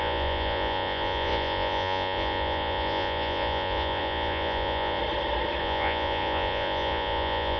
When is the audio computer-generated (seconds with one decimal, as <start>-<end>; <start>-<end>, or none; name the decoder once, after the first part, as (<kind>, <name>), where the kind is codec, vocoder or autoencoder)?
0.0-5.0 (vocoder, Vocos); 5.6-7.6